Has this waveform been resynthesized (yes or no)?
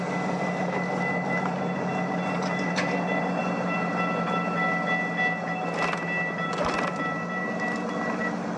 no